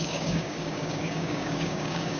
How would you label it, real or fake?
fake